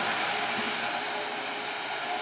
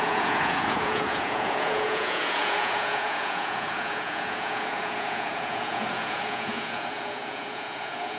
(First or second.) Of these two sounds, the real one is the first